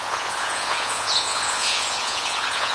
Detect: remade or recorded remade